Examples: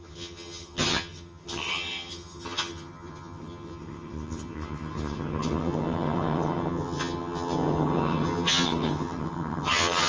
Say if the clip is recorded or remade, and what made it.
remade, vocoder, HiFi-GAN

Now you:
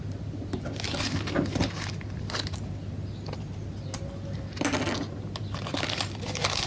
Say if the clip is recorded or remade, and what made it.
recorded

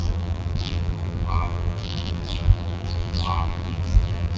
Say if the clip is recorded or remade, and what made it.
remade, vocoder, BigVGAN v2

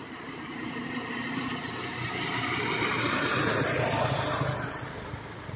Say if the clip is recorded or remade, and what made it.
remade, vocoder, BigVGAN v2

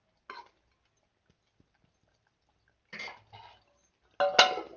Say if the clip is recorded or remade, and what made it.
recorded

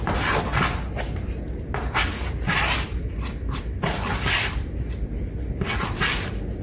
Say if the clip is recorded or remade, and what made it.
recorded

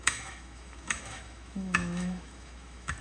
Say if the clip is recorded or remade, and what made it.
remade, autoencoder, DAC-VAE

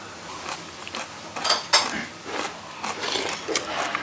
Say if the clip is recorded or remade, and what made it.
recorded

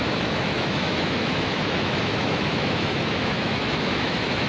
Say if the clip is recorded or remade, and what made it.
remade, autoencoder, DAC-VAE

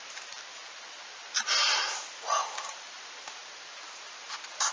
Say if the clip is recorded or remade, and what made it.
recorded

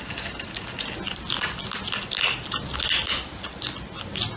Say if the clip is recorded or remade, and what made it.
recorded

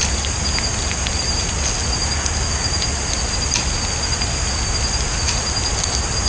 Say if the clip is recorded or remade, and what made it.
recorded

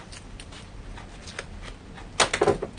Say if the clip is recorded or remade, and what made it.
recorded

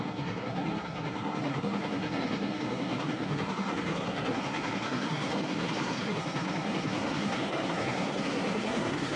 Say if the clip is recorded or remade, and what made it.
remade, codec, SNAC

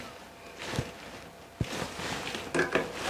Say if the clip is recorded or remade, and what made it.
recorded